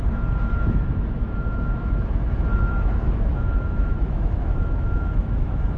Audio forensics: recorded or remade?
remade